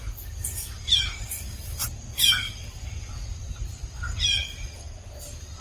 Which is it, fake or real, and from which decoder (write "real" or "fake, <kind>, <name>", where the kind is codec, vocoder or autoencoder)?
real